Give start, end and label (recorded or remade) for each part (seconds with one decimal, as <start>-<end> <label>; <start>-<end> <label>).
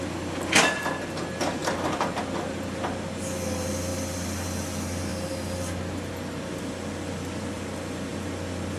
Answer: 0.0-8.8 recorded